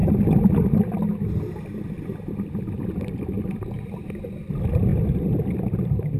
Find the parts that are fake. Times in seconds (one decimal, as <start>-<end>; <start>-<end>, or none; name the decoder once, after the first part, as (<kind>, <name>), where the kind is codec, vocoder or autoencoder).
none